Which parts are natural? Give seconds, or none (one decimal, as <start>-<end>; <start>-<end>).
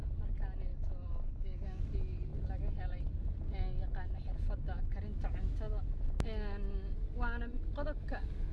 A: 0.0-0.7; 1.8-8.5